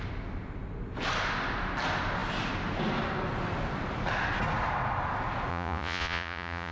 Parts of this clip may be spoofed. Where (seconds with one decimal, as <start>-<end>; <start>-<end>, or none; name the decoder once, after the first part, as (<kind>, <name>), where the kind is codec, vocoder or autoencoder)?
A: 5.5-6.7 (vocoder, Vocos)